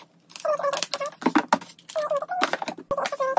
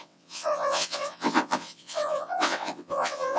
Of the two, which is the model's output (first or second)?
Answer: second